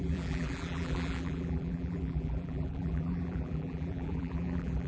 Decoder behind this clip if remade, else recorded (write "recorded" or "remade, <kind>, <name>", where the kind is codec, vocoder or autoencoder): remade, vocoder, BigVGAN v2